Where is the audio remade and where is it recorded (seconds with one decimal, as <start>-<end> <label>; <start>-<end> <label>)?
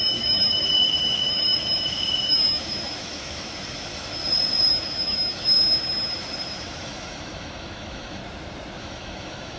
0.0-4.2 remade; 4.2-4.7 recorded; 4.7-8.2 remade; 8.2-8.8 recorded; 8.8-9.6 remade